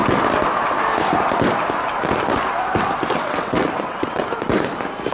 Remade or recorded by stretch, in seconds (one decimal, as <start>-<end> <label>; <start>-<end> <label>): 0.0-3.1 recorded; 3.1-4.2 remade; 4.2-5.1 recorded